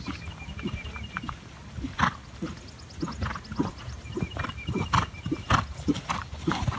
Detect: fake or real real